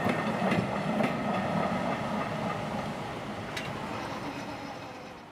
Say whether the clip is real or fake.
real